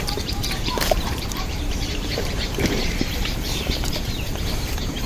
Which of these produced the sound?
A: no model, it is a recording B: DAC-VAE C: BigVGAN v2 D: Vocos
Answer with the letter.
C